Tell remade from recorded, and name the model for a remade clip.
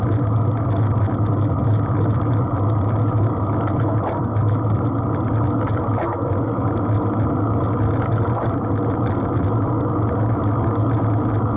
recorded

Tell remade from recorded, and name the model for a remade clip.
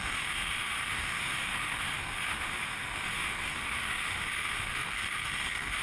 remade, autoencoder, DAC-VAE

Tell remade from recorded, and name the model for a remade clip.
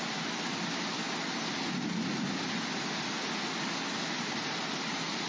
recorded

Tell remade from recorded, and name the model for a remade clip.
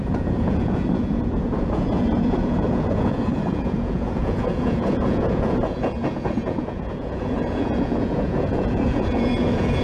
remade, vocoder, Vocos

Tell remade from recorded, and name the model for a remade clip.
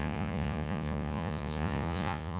remade, vocoder, Vocos